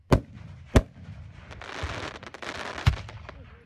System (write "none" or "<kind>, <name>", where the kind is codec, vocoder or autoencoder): none